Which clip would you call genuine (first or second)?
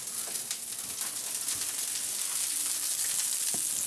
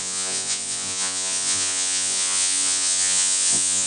first